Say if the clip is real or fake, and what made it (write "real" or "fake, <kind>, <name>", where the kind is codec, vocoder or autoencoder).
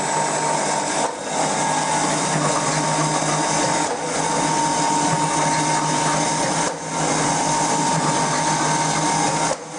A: real